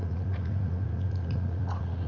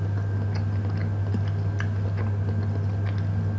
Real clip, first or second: second